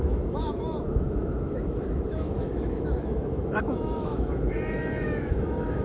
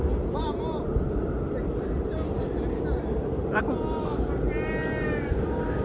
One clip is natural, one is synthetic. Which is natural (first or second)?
second